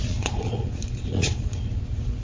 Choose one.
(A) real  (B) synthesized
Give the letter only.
B